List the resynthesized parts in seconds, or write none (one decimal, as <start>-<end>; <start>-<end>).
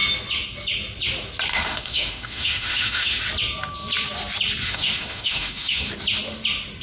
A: 1.5-3.2; 4.6-5.9